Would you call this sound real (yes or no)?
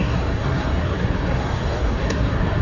no